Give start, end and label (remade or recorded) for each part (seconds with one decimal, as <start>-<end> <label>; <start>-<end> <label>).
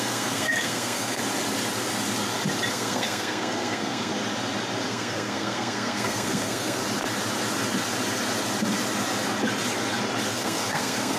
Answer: 0.0-1.2 remade; 1.2-2.7 recorded; 2.7-4.1 remade; 4.1-4.9 recorded; 4.9-6.8 remade; 6.8-10.3 recorded; 10.3-11.2 remade